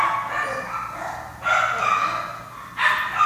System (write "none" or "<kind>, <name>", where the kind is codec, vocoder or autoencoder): none